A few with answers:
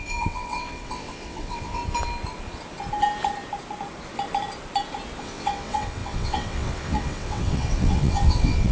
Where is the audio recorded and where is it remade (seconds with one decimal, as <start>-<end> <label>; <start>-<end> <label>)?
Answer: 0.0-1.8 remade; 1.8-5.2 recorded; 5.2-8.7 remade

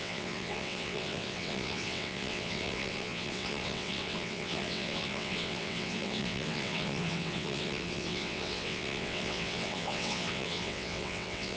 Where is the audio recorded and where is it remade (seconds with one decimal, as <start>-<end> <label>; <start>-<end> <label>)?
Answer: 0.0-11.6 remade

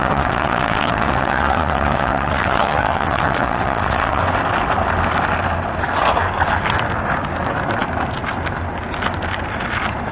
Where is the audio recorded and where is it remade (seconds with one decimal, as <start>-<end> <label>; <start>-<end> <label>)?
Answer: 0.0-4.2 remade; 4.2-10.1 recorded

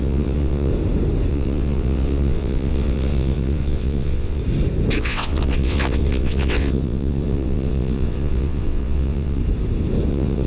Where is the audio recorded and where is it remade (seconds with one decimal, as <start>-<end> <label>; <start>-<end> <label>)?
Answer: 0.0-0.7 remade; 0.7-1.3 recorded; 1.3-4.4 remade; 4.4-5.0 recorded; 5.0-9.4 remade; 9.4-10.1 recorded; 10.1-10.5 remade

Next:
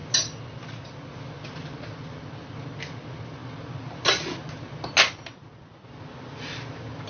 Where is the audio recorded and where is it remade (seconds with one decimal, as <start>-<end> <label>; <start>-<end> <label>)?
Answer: 0.0-7.1 recorded

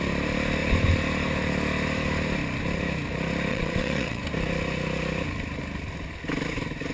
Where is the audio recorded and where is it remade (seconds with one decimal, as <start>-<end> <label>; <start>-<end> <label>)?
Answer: 0.0-3.5 recorded; 3.5-4.2 remade; 4.2-6.9 recorded

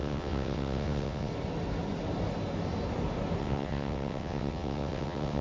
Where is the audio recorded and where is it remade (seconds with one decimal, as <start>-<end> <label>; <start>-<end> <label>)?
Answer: 0.0-1.3 remade; 1.3-3.4 recorded; 3.4-5.4 remade

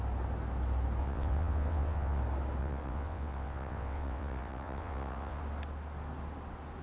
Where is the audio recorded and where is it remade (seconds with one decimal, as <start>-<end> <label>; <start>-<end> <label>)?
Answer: 0.0-1.0 recorded; 1.0-2.2 remade; 2.2-2.6 recorded; 2.6-5.4 remade; 5.4-6.8 recorded